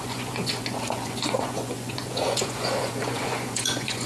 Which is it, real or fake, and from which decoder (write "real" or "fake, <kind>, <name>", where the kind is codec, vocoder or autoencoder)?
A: fake, vocoder, Vocos